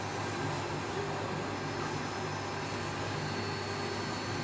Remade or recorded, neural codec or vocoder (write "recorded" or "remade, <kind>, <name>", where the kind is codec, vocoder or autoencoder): recorded